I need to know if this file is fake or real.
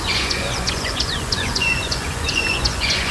fake